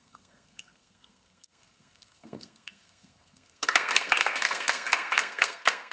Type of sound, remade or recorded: remade